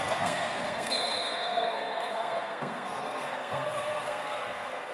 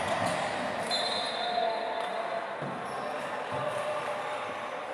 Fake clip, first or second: first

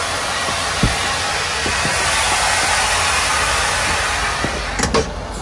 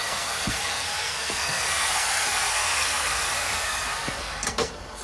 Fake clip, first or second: second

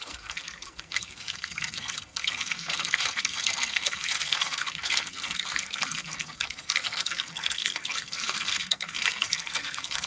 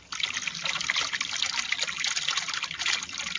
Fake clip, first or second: first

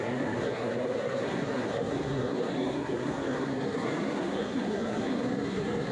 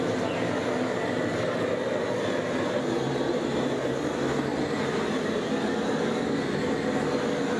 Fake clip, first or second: first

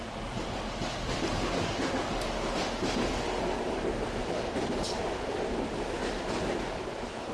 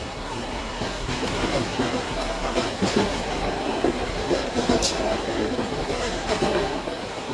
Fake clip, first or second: second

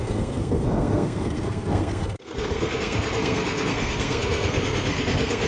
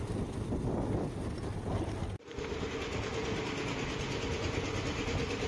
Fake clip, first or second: first